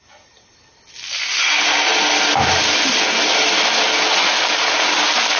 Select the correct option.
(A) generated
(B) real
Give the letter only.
B